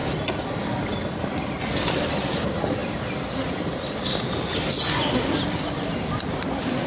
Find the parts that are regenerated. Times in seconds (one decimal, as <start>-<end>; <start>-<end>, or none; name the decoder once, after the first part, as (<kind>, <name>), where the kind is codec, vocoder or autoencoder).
none